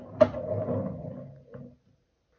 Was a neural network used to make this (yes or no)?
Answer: no